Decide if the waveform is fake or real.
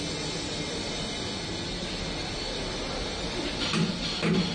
real